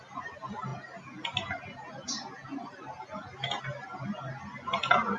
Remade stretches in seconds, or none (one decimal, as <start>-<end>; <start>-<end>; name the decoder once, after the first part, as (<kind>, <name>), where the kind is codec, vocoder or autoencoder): none